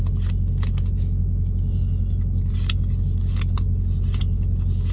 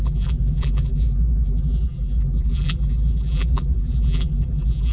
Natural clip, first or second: first